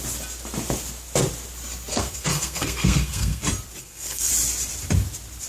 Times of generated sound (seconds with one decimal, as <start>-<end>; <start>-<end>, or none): 1.9-3.4; 3.8-4.3